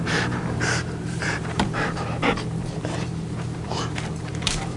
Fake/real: fake